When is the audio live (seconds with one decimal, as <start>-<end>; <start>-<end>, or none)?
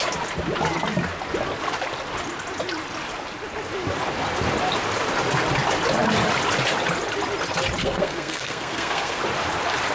0.0-7.8; 9.2-9.9